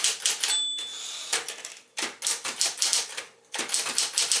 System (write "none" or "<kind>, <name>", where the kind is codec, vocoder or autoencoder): none